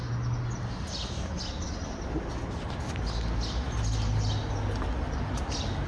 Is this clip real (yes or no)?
yes